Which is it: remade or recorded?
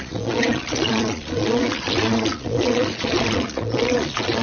remade